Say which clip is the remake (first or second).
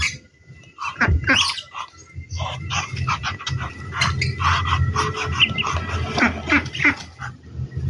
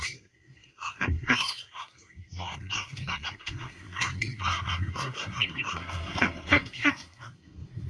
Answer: second